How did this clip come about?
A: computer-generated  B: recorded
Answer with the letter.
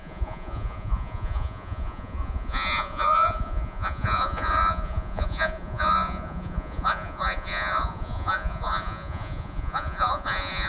A